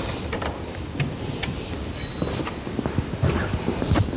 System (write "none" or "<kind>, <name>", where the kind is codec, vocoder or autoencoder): none